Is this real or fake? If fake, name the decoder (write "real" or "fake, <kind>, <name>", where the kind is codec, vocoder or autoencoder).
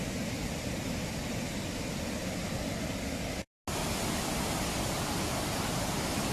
real